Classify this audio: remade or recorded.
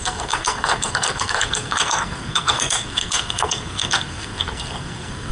remade